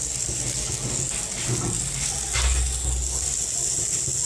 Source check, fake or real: real